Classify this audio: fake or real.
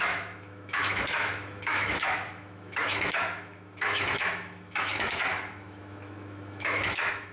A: fake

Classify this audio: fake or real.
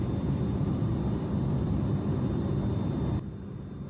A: real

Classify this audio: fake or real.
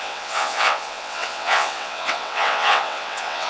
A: fake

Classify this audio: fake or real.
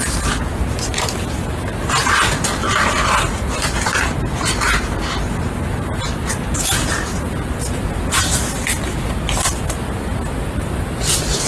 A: real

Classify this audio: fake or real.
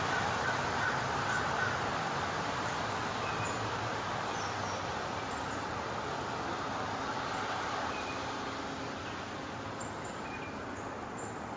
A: real